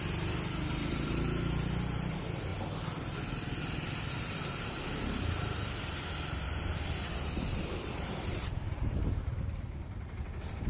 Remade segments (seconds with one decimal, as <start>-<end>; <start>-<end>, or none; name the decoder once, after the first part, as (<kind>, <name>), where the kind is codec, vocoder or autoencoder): 0.0-2.5 (vocoder, BigVGAN v2); 3.6-10.7